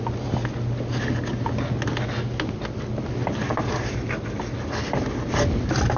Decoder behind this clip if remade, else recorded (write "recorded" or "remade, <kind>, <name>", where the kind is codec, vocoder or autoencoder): recorded